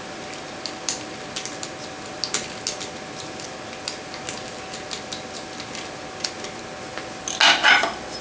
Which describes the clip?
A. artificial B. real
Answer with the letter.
B